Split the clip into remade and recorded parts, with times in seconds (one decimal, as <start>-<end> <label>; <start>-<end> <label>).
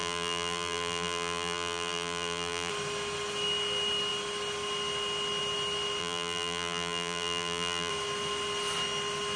0.0-2.7 remade; 2.7-6.0 recorded; 6.0-7.9 remade; 7.9-9.4 recorded